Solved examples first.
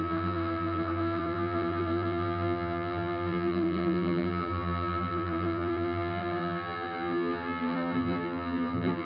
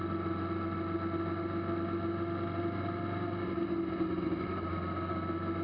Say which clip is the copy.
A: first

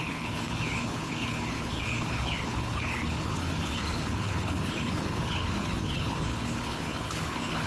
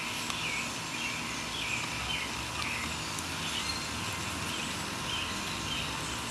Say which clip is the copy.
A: first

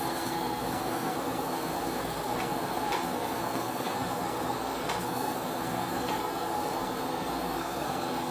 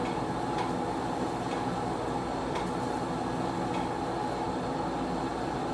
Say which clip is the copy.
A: first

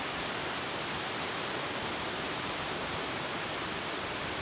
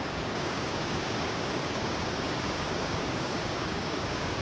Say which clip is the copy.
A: second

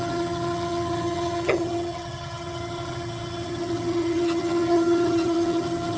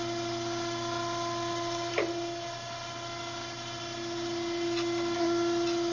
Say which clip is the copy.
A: first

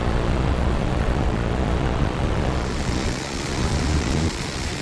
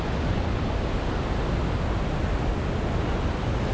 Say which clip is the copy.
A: first